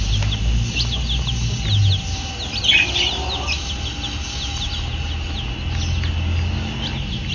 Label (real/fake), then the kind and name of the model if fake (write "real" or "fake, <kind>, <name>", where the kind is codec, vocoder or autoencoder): real